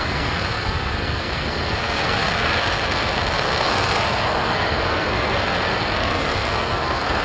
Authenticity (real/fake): fake